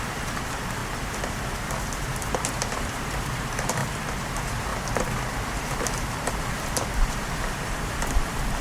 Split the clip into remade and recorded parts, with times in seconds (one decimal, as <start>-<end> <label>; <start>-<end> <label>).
0.0-0.8 remade; 0.8-2.8 recorded; 2.8-3.8 remade; 3.8-4.3 recorded; 4.3-4.7 remade; 4.7-7.1 recorded; 7.1-8.6 remade